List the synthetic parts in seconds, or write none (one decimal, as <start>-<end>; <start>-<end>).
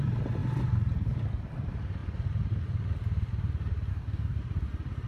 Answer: 3.9-4.4